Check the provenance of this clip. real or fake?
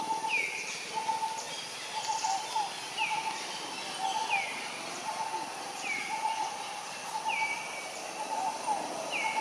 real